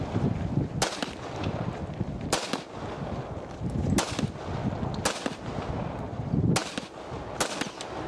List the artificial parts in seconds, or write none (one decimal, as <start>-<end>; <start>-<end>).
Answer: none